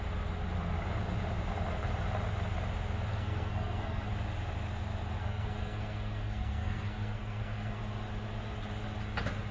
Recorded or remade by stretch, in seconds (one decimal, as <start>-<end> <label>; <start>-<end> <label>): 0.0-3.1 recorded; 3.1-4.1 remade; 4.1-5.2 recorded; 5.2-7.8 remade; 7.8-9.5 recorded